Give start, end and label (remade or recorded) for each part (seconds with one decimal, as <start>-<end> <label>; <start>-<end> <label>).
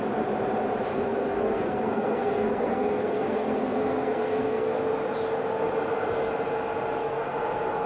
0.0-0.9 recorded; 0.9-4.8 remade; 4.8-7.0 recorded; 7.0-7.9 remade